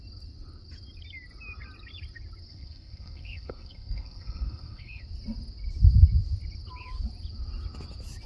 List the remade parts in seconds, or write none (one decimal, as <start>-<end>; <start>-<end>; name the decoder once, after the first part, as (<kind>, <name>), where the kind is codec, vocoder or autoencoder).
2.5-5.0 (codec, SNAC)